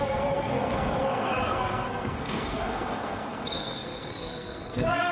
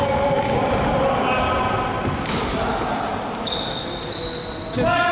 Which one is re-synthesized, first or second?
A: first